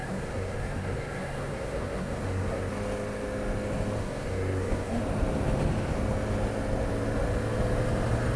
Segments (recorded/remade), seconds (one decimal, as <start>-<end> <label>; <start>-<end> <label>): 0.0-2.7 remade; 2.7-4.0 recorded; 4.0-5.0 remade; 5.0-8.4 recorded